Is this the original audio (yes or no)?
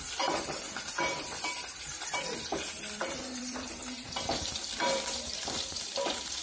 no